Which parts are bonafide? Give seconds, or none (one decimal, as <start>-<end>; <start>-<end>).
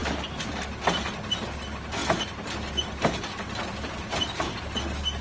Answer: 0.0-5.2